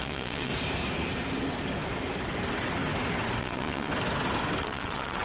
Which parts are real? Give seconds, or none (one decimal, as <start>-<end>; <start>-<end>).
0.5-3.4; 3.9-4.6